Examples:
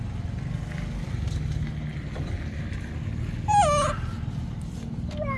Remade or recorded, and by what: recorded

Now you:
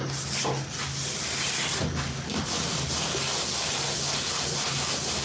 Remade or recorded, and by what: recorded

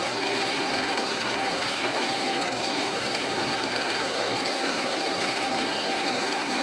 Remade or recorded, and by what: remade, codec, SNAC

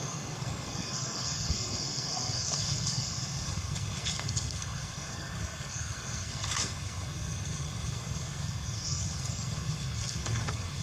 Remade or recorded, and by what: remade, codec, SNAC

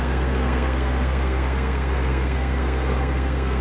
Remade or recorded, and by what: remade, codec, SNAC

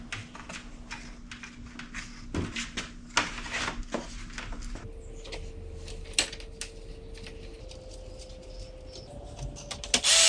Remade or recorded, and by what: recorded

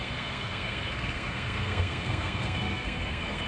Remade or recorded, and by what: remade, codec, SNAC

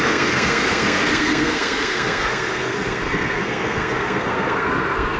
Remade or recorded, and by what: remade, codec, SNAC